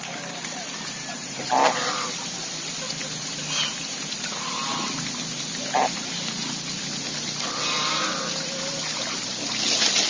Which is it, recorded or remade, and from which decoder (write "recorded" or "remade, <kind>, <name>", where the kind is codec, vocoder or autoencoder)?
recorded